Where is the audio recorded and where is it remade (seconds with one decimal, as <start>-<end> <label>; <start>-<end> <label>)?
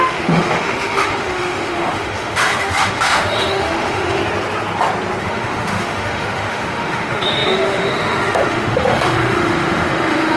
0.0-4.2 remade; 4.2-5.2 recorded; 5.2-10.4 remade